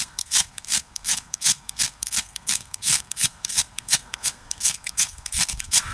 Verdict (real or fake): fake